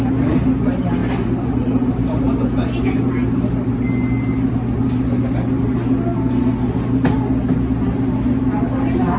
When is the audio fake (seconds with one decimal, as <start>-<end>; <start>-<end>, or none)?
none